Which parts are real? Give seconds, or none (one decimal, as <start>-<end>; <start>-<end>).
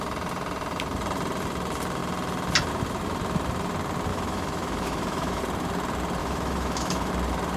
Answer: 0.0-4.1; 5.4-6.2; 7.1-7.6